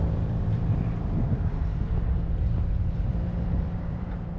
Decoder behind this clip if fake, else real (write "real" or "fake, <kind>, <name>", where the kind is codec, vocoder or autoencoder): fake, vocoder, BigVGAN v2